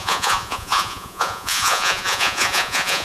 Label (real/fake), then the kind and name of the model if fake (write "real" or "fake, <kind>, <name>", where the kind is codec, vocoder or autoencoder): fake, vocoder, Vocos